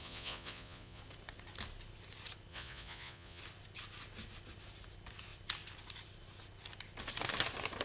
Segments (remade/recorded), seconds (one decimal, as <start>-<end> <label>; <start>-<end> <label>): 0.0-1.0 remade; 1.0-2.5 recorded; 2.5-3.4 remade; 3.4-7.8 recorded

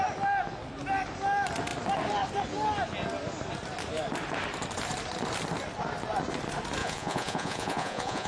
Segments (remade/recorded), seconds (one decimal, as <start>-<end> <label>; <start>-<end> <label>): 0.0-6.8 recorded; 6.8-8.3 remade

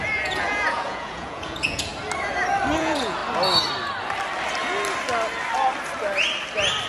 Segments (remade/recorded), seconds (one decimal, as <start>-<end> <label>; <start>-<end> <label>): 0.0-1.9 remade; 1.9-2.8 recorded; 2.8-3.2 remade; 3.2-6.9 recorded